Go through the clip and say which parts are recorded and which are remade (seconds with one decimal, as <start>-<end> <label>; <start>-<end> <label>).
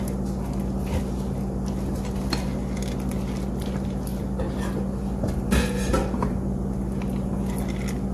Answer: 0.0-8.1 recorded